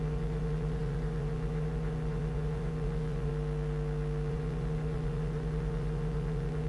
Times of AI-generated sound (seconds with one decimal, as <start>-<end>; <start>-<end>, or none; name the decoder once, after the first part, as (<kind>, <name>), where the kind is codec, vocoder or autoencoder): 0.0-3.3 (vocoder, Vocos); 4.3-6.7